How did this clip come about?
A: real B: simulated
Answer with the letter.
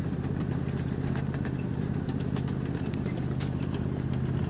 A